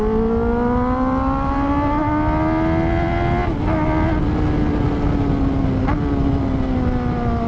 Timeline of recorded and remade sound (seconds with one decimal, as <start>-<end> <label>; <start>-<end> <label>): 0.0-7.5 recorded